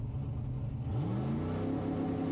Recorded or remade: recorded